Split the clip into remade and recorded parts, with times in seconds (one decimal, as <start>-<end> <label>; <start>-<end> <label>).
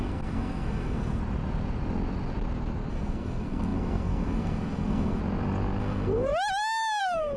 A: 0.0-1.2 remade; 1.2-2.9 recorded; 2.9-5.2 remade; 5.2-5.8 recorded; 5.8-6.3 remade; 6.3-7.0 recorded; 7.0-7.4 remade